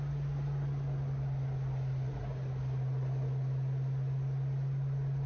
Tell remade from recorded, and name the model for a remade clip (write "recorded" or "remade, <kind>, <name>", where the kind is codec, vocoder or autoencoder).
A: recorded